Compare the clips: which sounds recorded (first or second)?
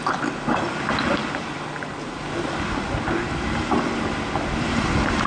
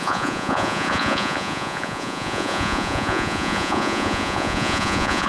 first